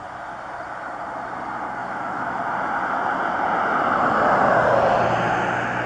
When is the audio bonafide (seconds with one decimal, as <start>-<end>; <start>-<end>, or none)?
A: 0.0-1.8; 2.4-5.9